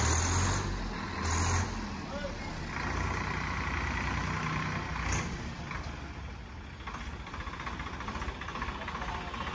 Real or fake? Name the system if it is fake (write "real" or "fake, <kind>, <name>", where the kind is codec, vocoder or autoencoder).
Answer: real